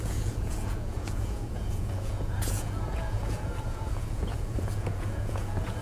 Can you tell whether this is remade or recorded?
remade